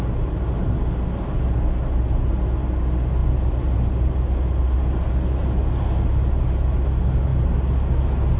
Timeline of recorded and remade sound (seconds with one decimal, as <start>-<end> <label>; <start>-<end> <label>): 0.0-8.4 recorded